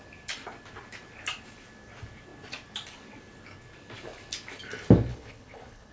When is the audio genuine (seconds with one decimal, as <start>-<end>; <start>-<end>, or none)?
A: 0.0-5.1